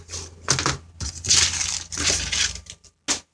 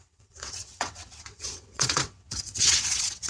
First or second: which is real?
first